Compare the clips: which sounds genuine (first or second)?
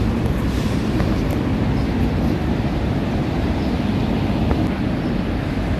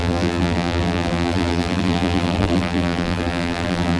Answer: first